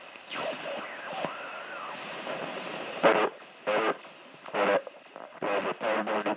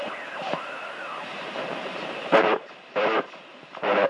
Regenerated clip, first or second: second